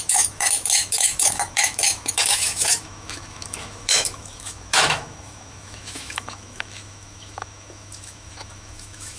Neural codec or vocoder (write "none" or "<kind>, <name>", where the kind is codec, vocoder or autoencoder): autoencoder, DAC-VAE